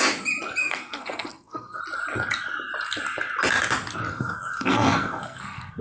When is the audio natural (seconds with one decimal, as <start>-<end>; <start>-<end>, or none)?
0.0-0.6; 1.8-4.1